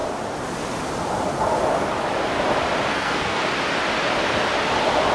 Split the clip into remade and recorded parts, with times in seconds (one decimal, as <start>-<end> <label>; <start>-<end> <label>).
0.0-2.9 recorded; 2.9-3.4 remade; 3.4-5.1 recorded